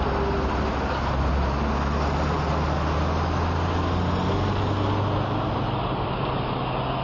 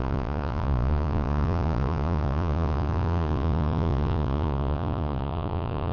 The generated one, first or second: second